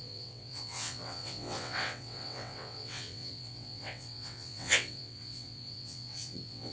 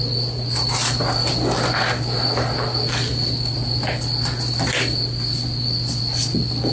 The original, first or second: second